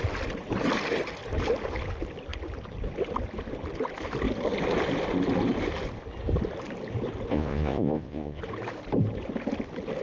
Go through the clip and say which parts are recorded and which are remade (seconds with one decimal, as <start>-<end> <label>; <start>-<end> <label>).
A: 0.0-7.3 recorded; 7.3-8.4 remade; 8.4-10.0 recorded